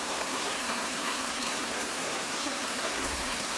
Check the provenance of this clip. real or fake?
fake